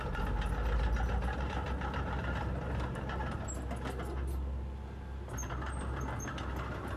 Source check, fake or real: real